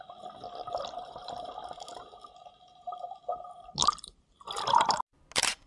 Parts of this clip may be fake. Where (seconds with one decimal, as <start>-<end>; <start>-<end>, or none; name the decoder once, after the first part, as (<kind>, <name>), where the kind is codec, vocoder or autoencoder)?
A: 3.8-4.4 (vocoder, BigVGAN v2)